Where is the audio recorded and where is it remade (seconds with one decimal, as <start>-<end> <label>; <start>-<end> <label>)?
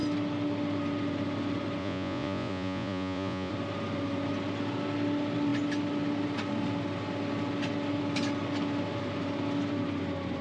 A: 0.0-1.8 recorded; 1.8-3.5 remade; 3.5-10.4 recorded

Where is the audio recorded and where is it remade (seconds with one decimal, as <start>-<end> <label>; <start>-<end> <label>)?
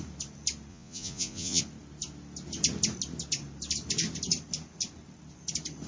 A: 0.0-0.7 recorded; 0.7-1.6 remade; 1.6-5.9 recorded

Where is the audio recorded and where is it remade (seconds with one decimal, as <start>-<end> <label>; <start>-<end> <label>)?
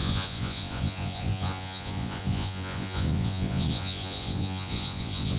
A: 0.0-5.4 remade